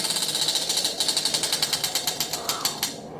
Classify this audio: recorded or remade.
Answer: recorded